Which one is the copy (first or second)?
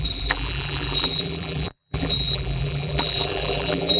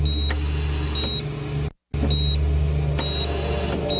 first